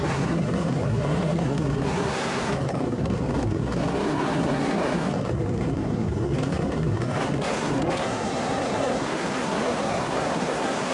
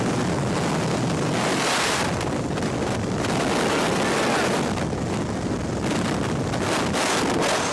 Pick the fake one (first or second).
first